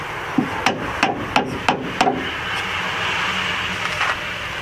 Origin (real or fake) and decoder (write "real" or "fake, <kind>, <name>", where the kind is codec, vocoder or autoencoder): real